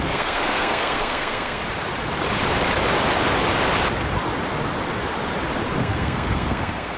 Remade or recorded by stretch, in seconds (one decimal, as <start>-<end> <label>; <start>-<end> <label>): 0.0-1.6 remade; 1.6-5.8 recorded; 5.8-7.0 remade